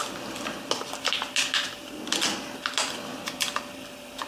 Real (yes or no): yes